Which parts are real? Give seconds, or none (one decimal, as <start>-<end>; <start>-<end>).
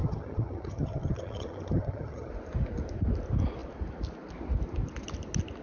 2.3-5.6